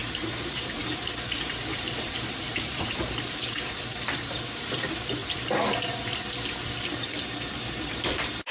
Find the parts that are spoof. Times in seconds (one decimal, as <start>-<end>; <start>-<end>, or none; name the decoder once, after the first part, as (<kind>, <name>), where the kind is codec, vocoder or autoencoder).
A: 0.0-5.2 (vocoder, BigVGAN v2); 7.5-8.5